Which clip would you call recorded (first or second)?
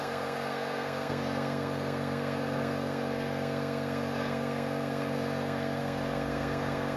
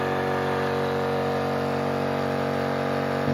second